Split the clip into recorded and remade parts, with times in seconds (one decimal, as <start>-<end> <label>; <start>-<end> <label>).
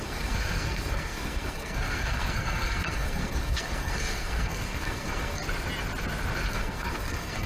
0.0-5.4 remade; 5.4-6.5 recorded; 6.5-7.5 remade